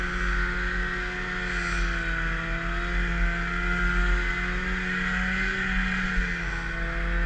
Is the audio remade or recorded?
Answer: recorded